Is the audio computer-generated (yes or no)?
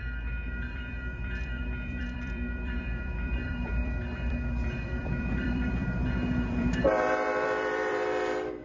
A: yes